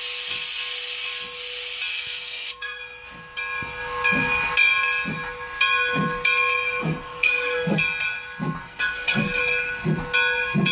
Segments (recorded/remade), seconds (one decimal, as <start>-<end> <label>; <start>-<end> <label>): 0.0-1.9 recorded; 1.9-2.8 remade; 2.8-6.8 recorded; 6.8-7.8 remade; 7.8-8.6 recorded; 8.6-9.4 remade; 9.4-10.7 recorded